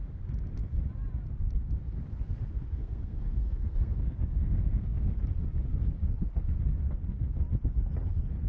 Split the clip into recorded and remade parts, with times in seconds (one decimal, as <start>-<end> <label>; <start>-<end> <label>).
0.0-2.8 recorded; 2.8-5.2 remade; 5.2-8.5 recorded